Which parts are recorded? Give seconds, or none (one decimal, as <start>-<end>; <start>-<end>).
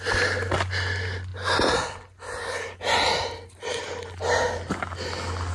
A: 0.0-5.5